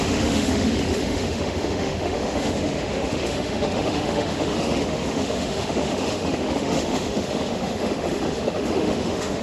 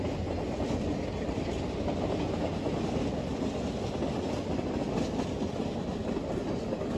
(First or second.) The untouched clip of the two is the second